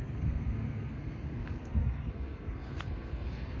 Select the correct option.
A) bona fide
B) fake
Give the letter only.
B